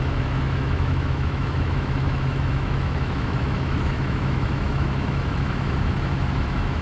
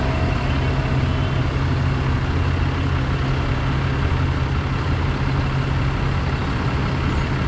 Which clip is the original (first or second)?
second